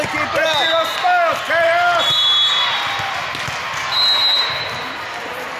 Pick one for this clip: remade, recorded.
recorded